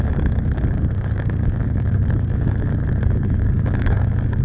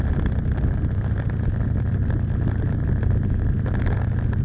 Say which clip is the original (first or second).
second